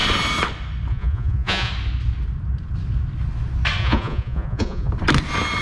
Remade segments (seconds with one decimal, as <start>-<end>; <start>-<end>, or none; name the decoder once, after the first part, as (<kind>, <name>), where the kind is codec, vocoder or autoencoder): 0.9-1.7 (vocoder, Vocos); 3.8-4.9